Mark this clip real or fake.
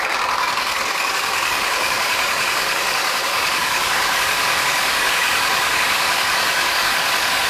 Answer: fake